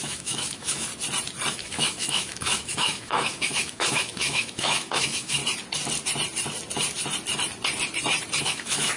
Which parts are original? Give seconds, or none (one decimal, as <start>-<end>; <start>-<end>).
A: 0.9-1.5; 5.4-8.4